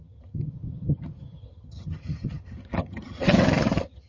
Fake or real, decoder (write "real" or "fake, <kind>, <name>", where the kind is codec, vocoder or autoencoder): fake, vocoder, HiFi-GAN